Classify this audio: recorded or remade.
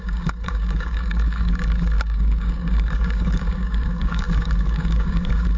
remade